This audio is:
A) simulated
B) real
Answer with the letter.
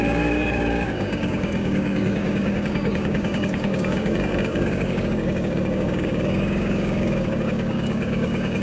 A